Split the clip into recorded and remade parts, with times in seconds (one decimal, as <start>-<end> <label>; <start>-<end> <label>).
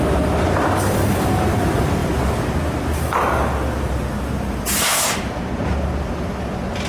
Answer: 0.0-6.9 recorded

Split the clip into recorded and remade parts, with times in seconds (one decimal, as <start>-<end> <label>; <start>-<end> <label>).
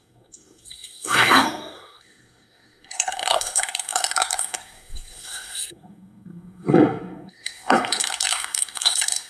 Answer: 0.0-9.3 remade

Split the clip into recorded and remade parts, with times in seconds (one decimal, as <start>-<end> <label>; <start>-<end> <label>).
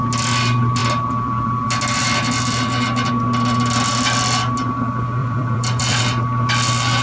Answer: 0.0-5.2 recorded; 5.2-6.0 remade; 6.0-7.0 recorded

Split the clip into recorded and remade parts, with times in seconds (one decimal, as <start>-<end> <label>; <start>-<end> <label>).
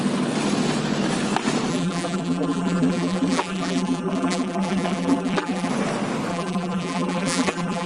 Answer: 0.0-1.7 recorded; 1.7-5.7 remade; 5.7-6.3 recorded; 6.3-7.9 remade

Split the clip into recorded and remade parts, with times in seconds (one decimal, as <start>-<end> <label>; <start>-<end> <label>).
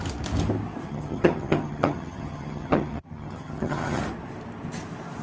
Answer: 0.0-0.9 recorded; 0.9-4.0 remade; 4.0-5.2 recorded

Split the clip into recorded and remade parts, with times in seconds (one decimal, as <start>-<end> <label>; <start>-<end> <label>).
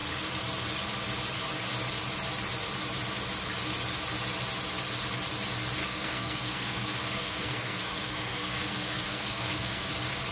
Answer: 0.0-5.8 recorded; 5.8-9.9 remade; 9.9-10.3 recorded